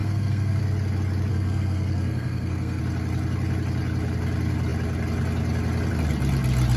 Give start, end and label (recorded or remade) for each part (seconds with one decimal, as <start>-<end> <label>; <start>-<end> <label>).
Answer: 0.0-0.6 remade; 0.6-1.3 recorded; 1.3-2.8 remade; 2.8-6.8 recorded